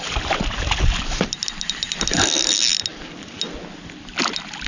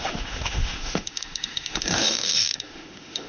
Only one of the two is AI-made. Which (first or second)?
second